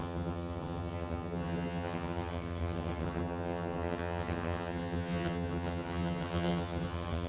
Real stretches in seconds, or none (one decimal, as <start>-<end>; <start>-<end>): none